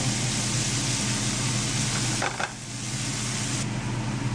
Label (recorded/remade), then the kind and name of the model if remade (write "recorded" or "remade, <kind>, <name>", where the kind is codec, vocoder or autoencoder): recorded